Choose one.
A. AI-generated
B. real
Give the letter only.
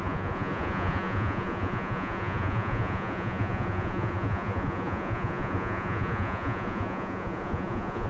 A